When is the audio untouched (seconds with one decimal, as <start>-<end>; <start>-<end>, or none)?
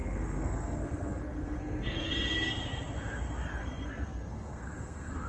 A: 2.1-3.6